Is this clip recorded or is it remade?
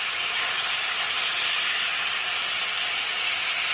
remade